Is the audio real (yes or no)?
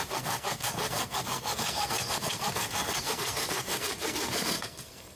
no